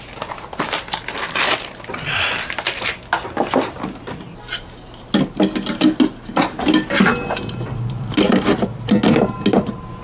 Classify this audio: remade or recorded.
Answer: recorded